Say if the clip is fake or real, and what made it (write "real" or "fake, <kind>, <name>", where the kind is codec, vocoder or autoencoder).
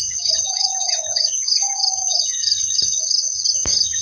fake, codec, DAC